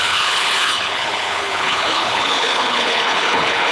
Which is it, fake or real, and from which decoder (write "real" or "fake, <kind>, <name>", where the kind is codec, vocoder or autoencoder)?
fake, codec, HILCodec